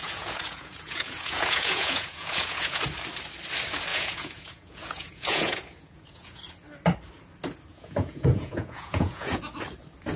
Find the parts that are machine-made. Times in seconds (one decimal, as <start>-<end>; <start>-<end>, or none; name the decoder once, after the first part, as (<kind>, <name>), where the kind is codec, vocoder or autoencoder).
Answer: 0.0-2.8 (vocoder, Vocos); 3.9-6.4; 7.7-9.4

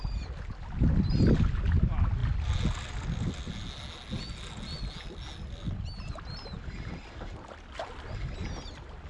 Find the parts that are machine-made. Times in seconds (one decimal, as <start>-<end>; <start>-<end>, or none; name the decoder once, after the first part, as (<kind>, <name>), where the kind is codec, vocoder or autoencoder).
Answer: none

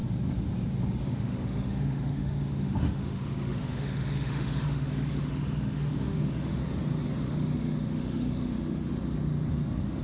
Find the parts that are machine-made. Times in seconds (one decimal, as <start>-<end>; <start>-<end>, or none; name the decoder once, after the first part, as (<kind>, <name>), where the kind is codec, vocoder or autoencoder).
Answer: 1.0-6.6 (autoencoder, DAC-VAE); 7.3-9.0

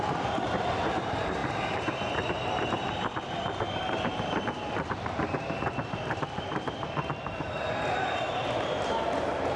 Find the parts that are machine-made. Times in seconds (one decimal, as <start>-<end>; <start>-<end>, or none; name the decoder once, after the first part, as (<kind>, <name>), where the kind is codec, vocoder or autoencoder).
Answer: 0.0-9.6 (vocoder, BigVGAN v2)

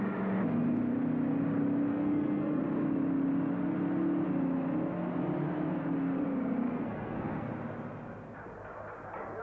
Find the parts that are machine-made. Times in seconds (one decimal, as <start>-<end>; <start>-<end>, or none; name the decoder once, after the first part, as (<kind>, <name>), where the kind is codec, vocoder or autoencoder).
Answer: 1.9-2.6 (codec, SNAC); 6.8-7.5

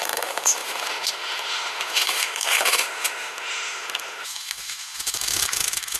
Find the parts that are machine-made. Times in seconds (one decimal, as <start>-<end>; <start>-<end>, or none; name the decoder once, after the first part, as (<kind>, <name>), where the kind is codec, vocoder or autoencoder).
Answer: 0.0-6.0 (autoencoder, DAC-VAE)